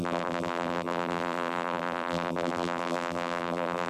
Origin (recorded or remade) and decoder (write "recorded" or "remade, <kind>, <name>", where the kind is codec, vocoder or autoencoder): remade, vocoder, BigVGAN v2